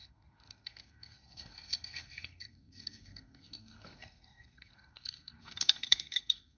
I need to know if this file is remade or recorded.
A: remade